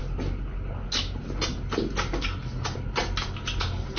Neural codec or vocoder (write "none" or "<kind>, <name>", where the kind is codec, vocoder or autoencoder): none